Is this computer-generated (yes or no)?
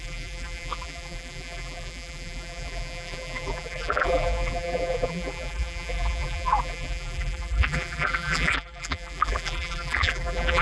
yes